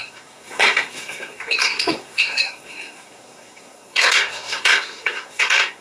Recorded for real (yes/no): no